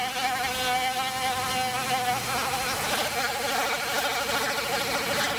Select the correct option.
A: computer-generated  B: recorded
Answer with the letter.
B